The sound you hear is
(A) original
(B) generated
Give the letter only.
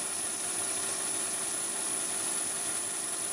B